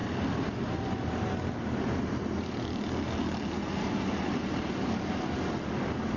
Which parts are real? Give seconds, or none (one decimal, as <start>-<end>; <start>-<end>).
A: 0.0-6.2